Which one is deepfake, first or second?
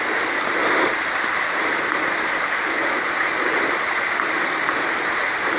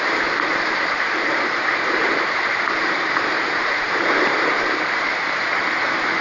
second